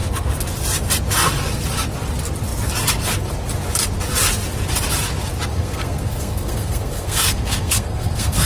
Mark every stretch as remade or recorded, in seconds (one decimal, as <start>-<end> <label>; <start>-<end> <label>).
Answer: 0.0-5.5 recorded; 5.5-8.5 remade